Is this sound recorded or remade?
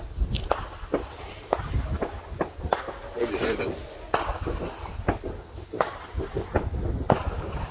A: recorded